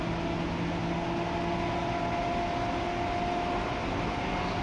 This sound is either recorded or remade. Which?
recorded